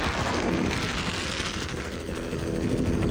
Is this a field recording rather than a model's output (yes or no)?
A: no